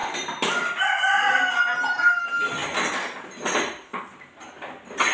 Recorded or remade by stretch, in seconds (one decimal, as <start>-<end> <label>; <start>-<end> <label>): 0.0-5.1 recorded